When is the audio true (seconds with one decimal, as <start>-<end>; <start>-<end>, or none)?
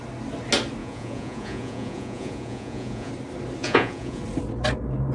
0.0-0.8; 3.1-3.6; 4.2-5.1